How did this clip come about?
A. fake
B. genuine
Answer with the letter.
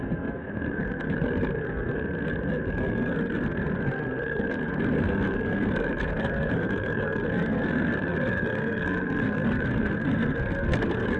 A